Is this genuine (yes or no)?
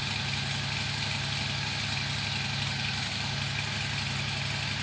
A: yes